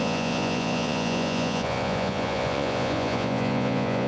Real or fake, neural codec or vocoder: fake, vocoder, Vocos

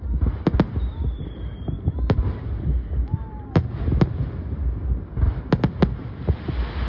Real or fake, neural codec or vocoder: real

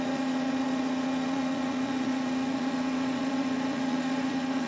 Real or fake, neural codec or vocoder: fake, vocoder, Vocos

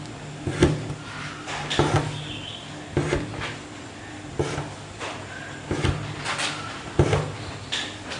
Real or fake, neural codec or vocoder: real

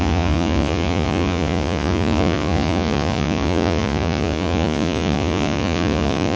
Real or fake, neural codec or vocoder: fake, vocoder, Vocos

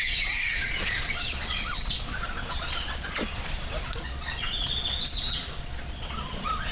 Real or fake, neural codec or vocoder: fake, vocoder, Vocos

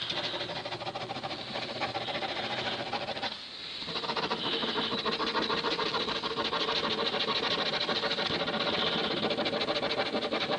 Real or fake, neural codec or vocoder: real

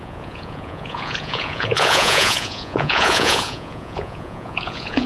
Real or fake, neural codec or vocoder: fake, vocoder, Vocos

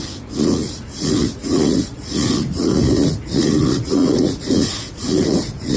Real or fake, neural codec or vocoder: fake, vocoder, Vocos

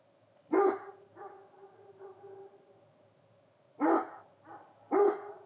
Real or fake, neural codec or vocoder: real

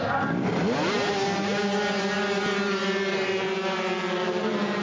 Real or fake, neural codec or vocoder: real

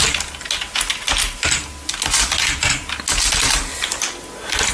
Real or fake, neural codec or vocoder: real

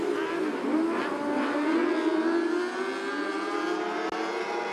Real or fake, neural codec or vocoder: real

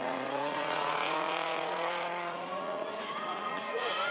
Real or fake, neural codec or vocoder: fake, vocoder, Vocos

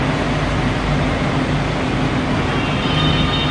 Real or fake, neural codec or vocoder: real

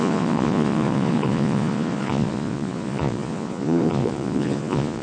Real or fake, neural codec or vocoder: fake, vocoder, Vocos